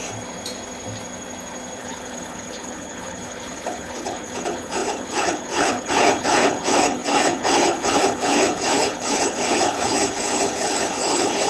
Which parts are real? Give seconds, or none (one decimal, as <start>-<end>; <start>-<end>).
0.0-1.8